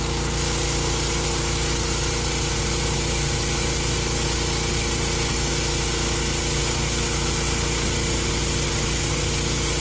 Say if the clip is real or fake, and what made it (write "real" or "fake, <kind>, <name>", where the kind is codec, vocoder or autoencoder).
real